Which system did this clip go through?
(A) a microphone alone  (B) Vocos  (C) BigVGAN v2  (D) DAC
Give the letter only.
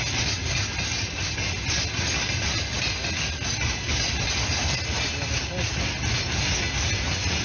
A